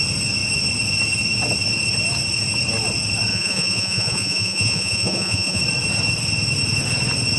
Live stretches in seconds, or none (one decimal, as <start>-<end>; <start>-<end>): 0.0-3.3; 5.6-7.4